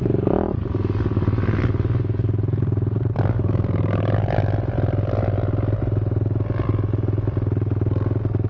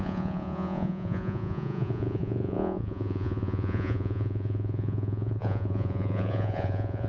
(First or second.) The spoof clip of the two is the second